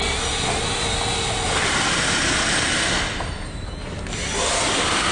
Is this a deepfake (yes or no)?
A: no